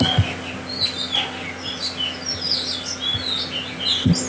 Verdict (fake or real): real